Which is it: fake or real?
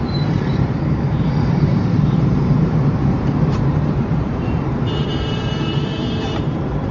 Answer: fake